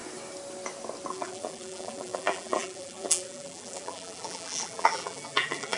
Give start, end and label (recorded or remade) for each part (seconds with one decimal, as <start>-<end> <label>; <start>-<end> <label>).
0.0-1.1 recorded; 1.1-5.8 remade